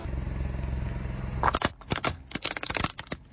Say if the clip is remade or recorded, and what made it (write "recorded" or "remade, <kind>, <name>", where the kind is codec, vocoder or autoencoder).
recorded